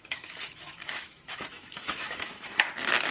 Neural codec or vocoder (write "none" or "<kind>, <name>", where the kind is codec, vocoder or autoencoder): autoencoder, DAC-VAE